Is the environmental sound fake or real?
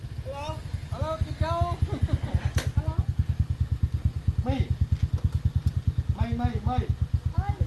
real